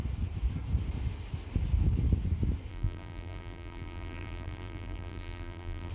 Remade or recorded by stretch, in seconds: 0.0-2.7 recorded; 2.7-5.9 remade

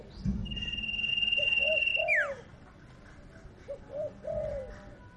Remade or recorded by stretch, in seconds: 0.0-0.4 remade; 0.4-1.1 recorded; 1.1-5.2 remade

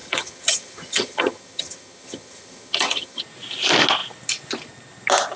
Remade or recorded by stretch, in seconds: 0.0-3.2 remade; 3.2-5.4 recorded

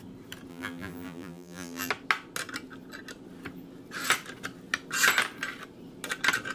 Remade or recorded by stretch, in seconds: 0.0-0.5 recorded; 0.5-1.9 remade; 1.9-6.5 recorded

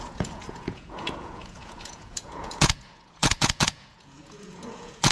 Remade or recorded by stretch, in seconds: 0.0-5.1 remade

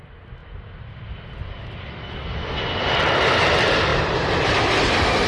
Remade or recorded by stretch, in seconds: 0.0-5.3 recorded